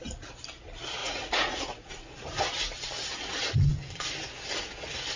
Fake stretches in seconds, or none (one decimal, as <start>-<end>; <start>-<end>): 1.0-2.1